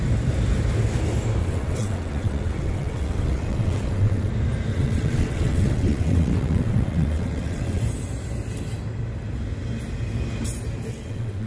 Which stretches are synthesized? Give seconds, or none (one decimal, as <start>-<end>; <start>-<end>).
1.4-4.3; 4.7-7.8; 10.9-11.5